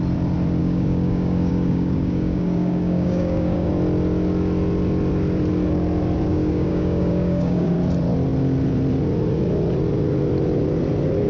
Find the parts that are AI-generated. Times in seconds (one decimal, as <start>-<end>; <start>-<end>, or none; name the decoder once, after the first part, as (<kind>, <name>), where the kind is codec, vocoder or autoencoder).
0.6-3.7 (codec, DAC); 6.3-7.7